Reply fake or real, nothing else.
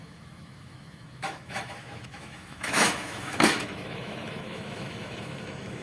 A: fake